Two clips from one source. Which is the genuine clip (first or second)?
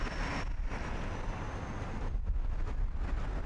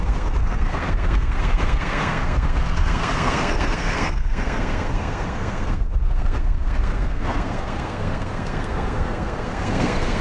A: first